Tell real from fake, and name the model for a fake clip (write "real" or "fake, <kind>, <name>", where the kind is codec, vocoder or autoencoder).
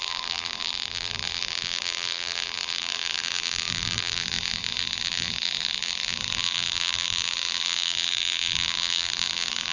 fake, vocoder, BigVGAN v2